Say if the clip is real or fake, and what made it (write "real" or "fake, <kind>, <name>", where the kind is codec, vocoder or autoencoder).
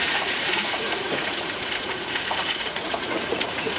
fake, vocoder, Vocos